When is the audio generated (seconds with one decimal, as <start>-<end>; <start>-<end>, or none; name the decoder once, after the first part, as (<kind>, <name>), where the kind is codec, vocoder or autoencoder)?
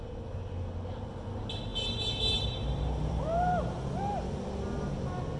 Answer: 1.7-4.0 (vocoder, BigVGAN v2)